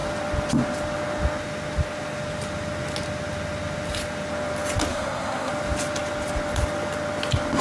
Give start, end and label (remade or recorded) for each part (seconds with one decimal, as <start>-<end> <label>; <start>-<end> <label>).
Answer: 0.0-4.9 recorded; 4.9-5.5 remade; 5.5-7.6 recorded